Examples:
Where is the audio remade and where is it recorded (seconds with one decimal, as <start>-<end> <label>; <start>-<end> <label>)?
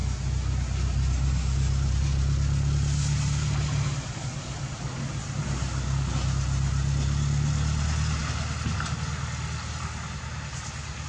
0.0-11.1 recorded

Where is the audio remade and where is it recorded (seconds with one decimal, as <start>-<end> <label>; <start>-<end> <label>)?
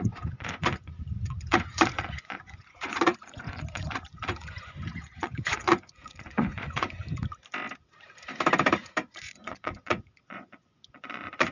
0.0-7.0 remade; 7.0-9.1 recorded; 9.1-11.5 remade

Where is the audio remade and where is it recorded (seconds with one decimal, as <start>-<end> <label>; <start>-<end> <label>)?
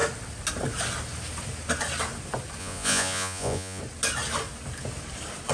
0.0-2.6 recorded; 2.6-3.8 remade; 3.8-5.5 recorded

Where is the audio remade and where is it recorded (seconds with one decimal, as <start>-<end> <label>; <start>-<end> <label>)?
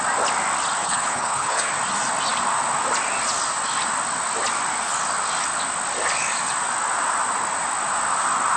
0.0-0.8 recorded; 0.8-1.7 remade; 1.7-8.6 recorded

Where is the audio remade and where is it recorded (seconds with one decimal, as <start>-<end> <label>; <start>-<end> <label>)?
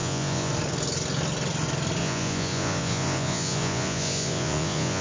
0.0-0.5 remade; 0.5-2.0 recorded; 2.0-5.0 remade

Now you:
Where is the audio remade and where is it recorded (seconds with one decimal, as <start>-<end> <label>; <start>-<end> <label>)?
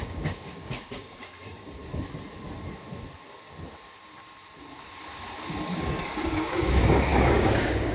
0.0-1.8 remade; 1.8-5.6 recorded; 5.6-7.9 remade